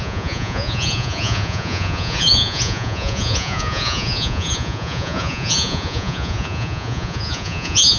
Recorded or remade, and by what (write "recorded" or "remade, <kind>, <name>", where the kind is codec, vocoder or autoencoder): remade, vocoder, Vocos